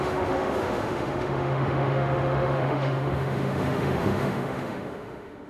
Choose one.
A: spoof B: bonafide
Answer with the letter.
A